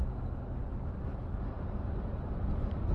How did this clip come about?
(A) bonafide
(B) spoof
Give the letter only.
A